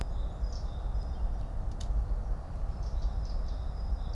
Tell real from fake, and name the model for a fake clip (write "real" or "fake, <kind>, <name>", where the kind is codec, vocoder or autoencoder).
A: fake, vocoder, BigVGAN v2